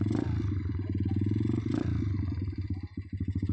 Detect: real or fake real